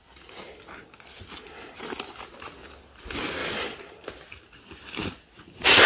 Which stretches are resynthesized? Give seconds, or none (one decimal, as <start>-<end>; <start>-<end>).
3.4-5.9